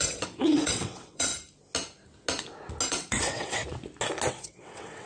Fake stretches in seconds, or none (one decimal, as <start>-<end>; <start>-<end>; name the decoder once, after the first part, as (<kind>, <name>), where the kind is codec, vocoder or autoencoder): 0.0-1.3 (vocoder, WaveNeXt); 2.9-3.6; 4.3-5.1